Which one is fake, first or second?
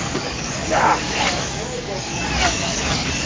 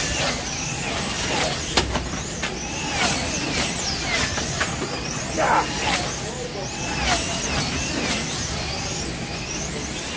first